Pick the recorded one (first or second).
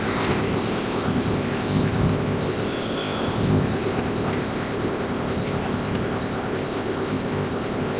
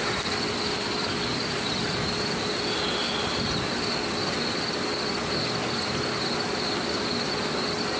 second